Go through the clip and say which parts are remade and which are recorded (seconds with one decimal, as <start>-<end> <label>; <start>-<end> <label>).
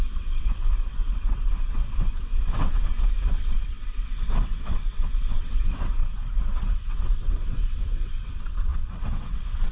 0.0-9.7 remade